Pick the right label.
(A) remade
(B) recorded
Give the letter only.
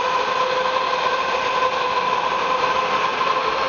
B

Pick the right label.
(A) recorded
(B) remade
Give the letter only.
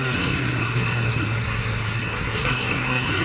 B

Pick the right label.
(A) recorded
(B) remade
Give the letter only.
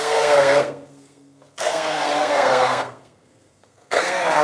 B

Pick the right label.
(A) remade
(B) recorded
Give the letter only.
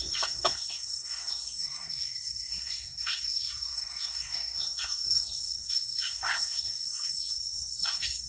A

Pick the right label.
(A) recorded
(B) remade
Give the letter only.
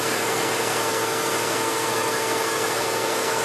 B